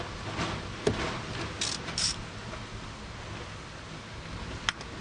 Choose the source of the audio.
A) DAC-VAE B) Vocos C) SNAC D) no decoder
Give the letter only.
D